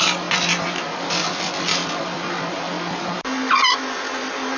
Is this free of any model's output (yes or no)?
yes